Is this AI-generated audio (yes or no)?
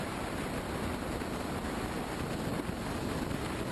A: no